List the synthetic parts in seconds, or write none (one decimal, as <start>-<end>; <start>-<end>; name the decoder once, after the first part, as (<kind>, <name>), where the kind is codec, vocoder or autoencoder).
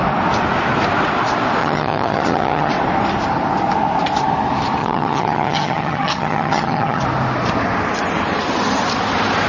1.6-2.7 (vocoder, HiFi-GAN); 4.8-7.0